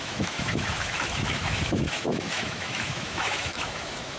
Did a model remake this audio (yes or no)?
yes